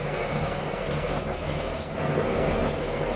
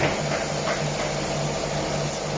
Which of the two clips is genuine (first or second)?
second